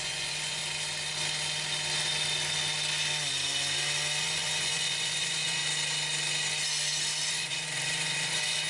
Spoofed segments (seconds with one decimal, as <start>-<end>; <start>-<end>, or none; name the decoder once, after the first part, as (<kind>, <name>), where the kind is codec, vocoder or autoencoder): 0.0-0.6 (vocoder, Vocos); 4.2-5.6; 7.3-8.7